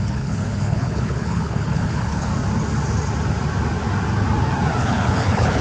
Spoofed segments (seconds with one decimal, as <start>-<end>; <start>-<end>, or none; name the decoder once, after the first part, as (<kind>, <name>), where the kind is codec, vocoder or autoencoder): 0.0-2.3 (codec, HILCodec); 4.8-5.6